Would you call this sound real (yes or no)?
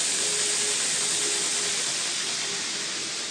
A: yes